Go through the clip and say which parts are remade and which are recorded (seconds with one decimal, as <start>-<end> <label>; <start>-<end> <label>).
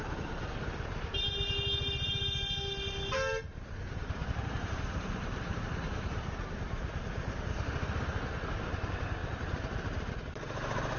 0.0-4.2 recorded; 4.2-7.2 remade; 7.2-11.0 recorded